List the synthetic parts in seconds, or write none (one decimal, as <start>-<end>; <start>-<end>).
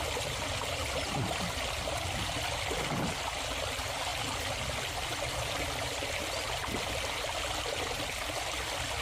none